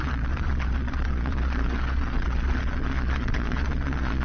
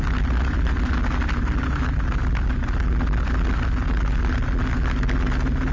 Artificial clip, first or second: first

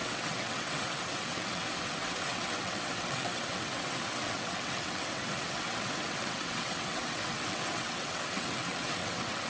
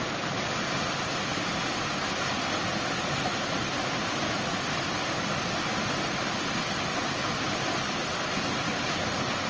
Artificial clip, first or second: first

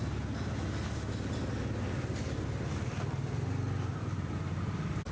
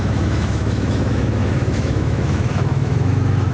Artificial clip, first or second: second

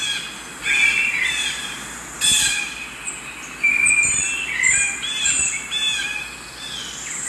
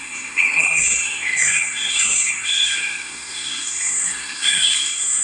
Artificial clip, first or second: second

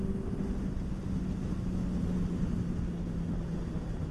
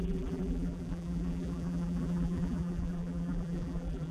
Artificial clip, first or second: second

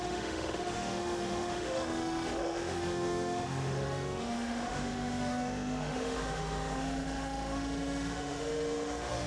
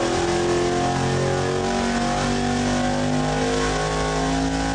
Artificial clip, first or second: first